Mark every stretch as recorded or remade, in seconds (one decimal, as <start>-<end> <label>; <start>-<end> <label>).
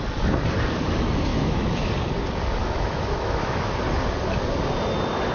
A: 0.0-1.3 recorded; 1.3-1.9 remade; 1.9-2.6 recorded; 2.6-3.7 remade; 3.7-5.3 recorded